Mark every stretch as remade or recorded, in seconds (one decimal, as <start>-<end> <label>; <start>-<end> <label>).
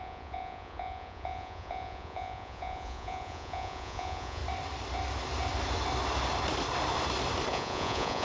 0.0-4.4 remade; 4.4-7.5 recorded; 7.5-8.2 remade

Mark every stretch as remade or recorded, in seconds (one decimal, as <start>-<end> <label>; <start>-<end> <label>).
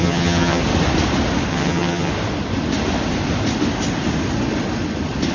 0.0-0.6 remade; 0.6-1.5 recorded; 1.5-2.1 remade; 2.1-5.3 recorded